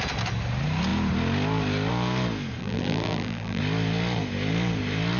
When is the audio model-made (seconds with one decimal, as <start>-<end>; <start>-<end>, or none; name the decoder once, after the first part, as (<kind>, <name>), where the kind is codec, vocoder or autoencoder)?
2.6-3.6 (vocoder, BigVGAN v2)